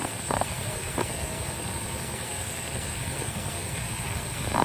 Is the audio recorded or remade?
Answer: remade